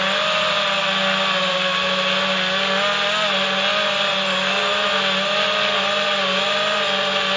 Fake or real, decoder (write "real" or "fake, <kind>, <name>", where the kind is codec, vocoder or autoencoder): real